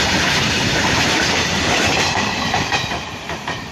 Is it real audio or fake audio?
fake